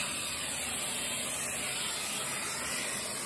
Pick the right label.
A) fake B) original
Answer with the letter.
B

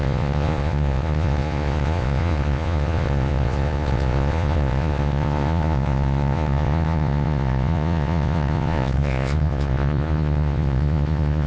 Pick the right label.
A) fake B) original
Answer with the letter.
A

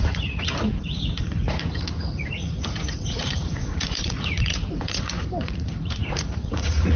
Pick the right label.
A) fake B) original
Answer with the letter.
A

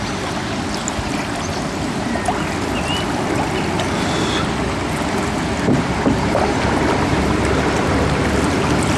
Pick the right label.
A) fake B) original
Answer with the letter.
B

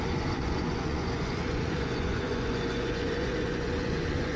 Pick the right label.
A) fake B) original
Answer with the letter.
A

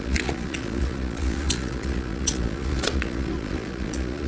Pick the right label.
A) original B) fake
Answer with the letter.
B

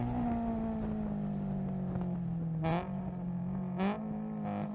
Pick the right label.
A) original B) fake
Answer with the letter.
A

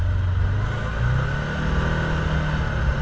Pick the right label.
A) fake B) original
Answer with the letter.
B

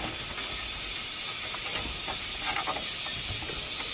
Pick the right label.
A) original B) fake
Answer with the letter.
A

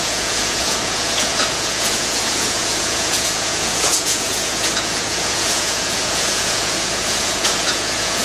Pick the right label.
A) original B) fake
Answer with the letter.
B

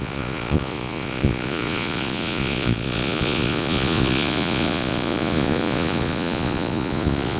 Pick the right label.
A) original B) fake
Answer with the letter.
B